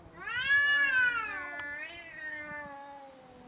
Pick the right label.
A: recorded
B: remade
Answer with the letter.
A